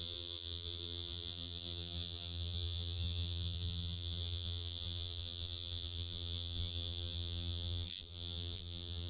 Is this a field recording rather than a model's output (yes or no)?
no